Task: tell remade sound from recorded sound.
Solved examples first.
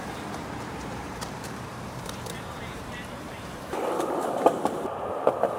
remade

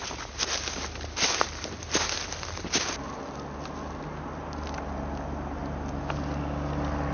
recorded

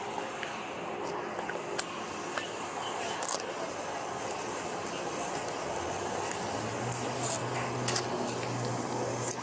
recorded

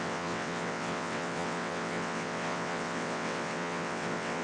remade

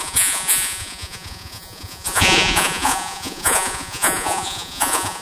remade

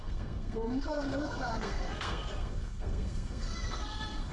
remade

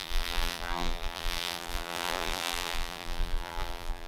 remade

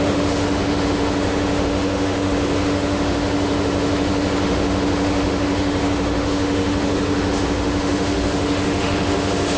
remade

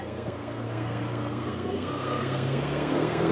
remade